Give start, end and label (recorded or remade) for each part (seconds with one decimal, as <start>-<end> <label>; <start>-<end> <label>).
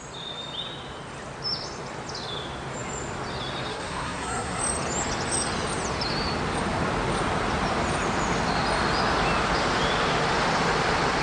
0.0-3.7 recorded; 3.7-4.6 remade; 4.6-11.2 recorded